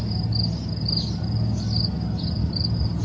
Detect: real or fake real